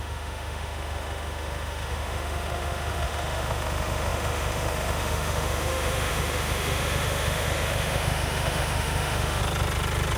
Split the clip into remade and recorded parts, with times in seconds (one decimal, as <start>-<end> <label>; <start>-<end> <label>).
0.0-9.4 remade; 9.4-10.2 recorded